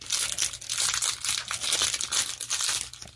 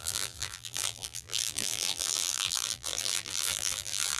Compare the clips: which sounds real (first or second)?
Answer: first